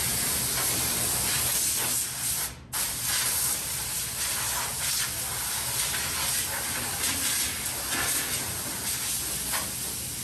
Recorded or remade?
recorded